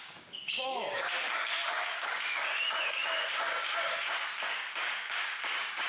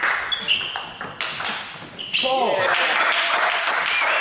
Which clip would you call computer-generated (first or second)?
first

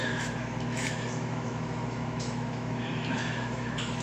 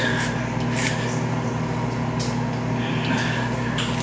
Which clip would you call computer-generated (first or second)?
first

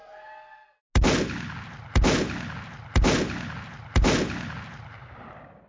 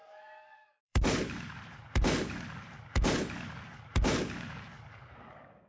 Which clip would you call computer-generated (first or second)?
second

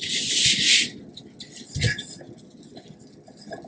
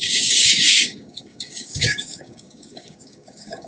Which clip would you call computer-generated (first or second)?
second